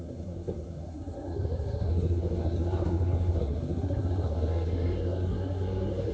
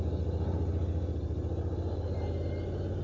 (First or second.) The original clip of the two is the second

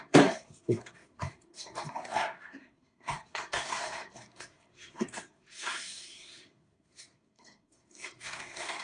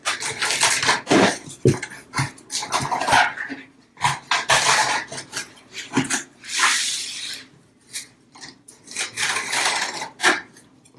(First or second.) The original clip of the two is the second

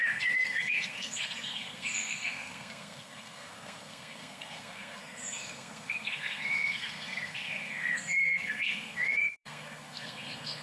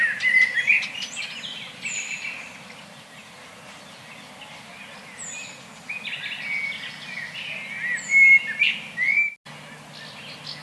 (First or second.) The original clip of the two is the second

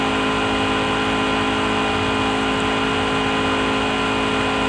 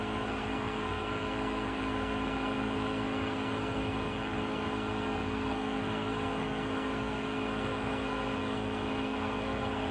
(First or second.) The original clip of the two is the first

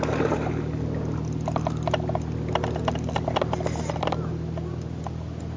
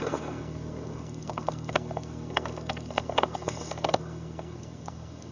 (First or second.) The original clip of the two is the first